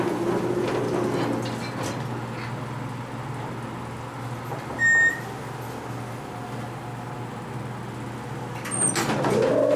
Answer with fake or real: real